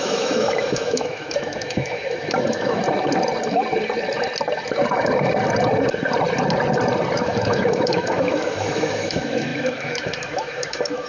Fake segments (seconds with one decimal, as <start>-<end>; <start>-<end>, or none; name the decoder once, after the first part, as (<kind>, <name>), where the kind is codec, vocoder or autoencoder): 0.0-2.8 (autoencoder, DAC-VAE); 7.2-11.1